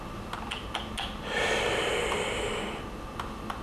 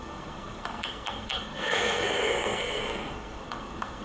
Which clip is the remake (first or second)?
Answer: second